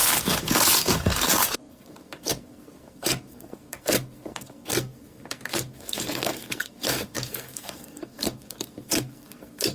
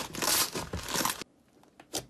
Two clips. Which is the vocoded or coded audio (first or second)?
first